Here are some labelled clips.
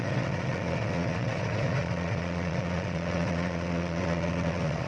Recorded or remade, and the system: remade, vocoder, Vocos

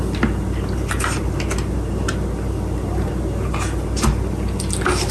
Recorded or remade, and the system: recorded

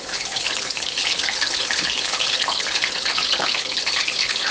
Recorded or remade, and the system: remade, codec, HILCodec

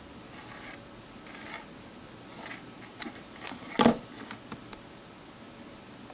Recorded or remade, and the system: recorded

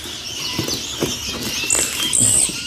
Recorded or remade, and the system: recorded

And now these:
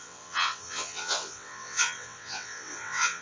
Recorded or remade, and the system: remade, vocoder, WaveNeXt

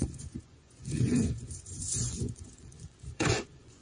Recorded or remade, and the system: remade, vocoder, Vocos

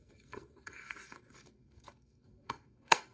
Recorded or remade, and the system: remade, codec, SNAC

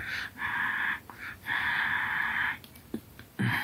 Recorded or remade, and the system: recorded